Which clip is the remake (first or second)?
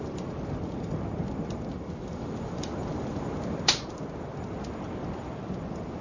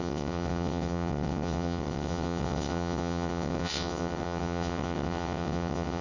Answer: second